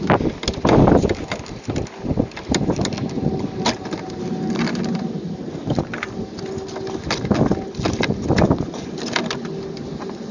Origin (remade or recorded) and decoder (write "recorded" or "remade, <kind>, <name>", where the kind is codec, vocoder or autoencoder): recorded